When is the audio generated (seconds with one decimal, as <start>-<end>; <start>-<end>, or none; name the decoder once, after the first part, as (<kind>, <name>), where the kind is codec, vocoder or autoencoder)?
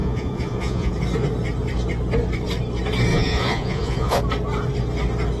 0.0-0.9 (vocoder, Vocos); 3.1-4.2